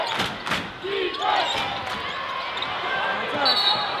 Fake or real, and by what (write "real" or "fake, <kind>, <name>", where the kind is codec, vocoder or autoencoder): real